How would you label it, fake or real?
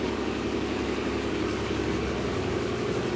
fake